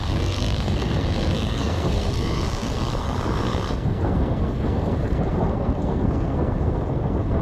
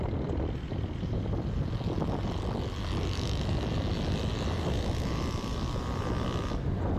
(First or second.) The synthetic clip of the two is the first